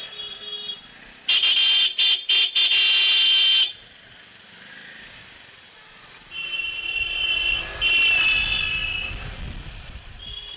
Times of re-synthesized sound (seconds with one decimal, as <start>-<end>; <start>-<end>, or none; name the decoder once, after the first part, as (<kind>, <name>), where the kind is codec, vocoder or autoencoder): none